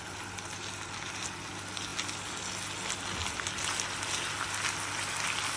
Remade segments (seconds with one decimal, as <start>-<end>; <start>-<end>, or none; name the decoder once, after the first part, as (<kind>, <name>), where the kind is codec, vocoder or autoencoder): none